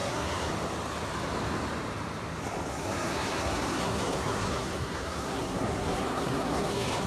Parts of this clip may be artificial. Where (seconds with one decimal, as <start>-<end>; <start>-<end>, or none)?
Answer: 0.0-0.5; 2.7-7.1